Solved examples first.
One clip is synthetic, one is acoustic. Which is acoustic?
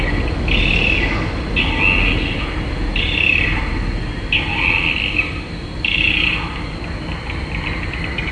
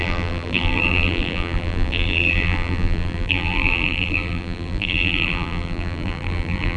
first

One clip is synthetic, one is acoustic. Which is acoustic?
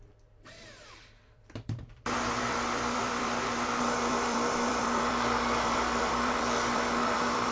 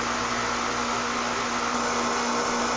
second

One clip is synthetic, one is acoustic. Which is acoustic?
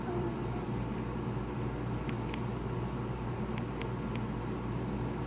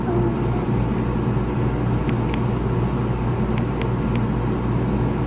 second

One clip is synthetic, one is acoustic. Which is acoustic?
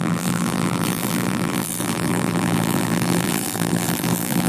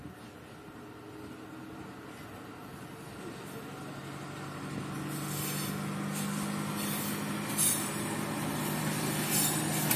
second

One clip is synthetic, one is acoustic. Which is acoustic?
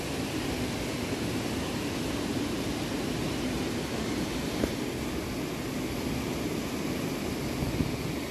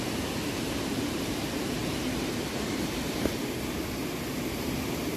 first